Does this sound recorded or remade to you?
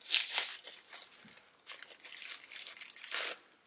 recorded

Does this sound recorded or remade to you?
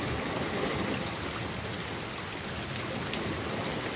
recorded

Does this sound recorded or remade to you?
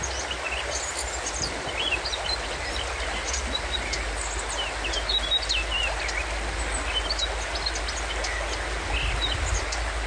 recorded